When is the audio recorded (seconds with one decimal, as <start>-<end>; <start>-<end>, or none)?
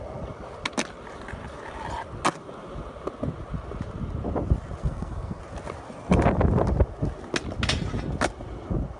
0.0-4.8; 5.4-9.0